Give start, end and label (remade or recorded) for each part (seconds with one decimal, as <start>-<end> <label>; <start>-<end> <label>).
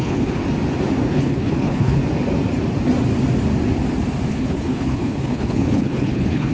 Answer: 0.0-0.4 remade; 0.4-1.1 recorded; 1.1-2.0 remade; 2.0-4.3 recorded; 4.3-6.5 remade